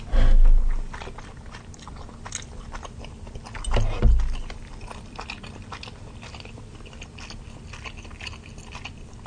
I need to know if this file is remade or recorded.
recorded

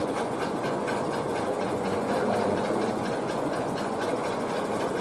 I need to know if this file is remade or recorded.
remade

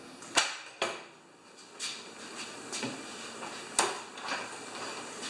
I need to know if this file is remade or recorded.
recorded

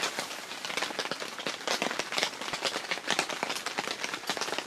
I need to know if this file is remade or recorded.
recorded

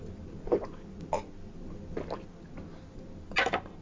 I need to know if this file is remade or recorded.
recorded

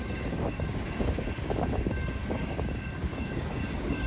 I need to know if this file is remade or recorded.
remade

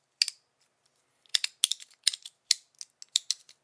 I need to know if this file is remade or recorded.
recorded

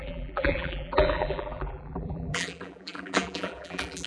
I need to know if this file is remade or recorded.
remade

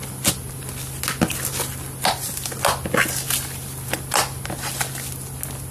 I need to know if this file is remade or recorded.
recorded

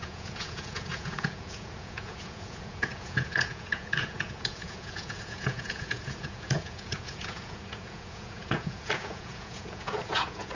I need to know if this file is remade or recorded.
remade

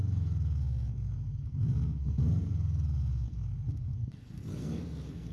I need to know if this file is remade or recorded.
remade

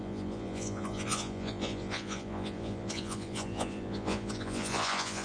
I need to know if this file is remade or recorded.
remade